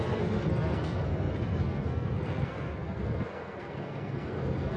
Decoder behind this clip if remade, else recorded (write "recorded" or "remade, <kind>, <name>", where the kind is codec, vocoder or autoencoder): remade, codec, SNAC